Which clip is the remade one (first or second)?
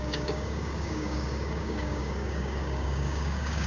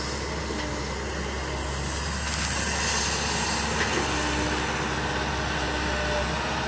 first